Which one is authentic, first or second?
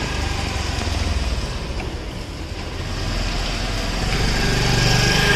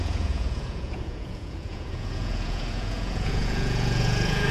first